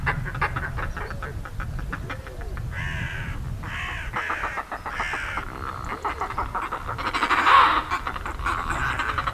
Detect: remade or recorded recorded